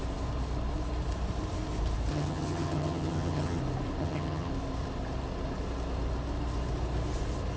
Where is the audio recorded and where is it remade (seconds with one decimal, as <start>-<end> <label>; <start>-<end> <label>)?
0.0-2.1 recorded; 2.1-3.6 remade; 3.6-4.0 recorded; 4.0-4.5 remade; 4.5-7.6 recorded